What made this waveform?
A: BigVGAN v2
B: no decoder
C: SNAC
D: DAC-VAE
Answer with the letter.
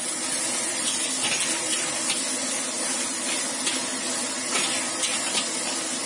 B